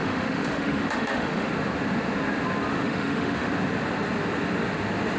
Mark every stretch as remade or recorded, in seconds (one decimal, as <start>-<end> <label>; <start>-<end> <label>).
0.0-1.5 remade; 1.5-2.7 recorded; 2.7-3.5 remade; 3.5-5.2 recorded